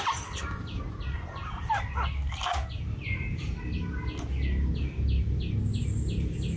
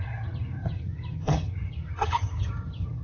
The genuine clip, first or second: first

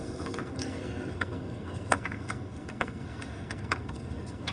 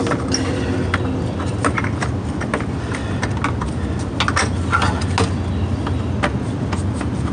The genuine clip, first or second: second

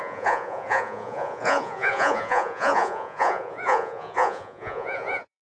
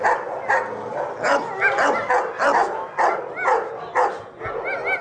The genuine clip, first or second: second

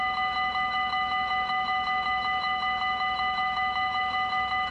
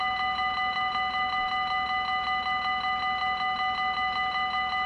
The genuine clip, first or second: second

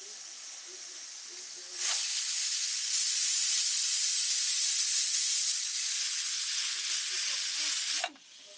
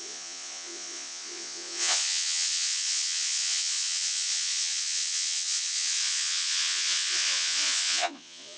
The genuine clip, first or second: first